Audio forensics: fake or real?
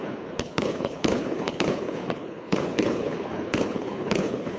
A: fake